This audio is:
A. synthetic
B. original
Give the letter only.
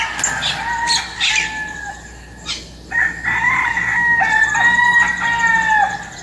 B